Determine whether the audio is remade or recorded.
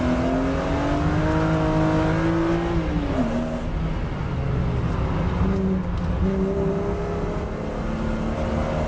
recorded